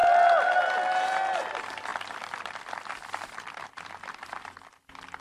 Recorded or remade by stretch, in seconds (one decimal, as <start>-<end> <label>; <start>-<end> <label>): 0.0-1.9 recorded; 1.9-4.2 remade; 4.2-5.2 recorded